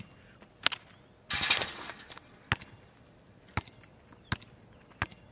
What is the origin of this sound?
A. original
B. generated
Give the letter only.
A